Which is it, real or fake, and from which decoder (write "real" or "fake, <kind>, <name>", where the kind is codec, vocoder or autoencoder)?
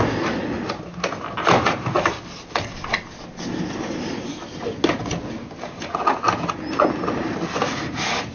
real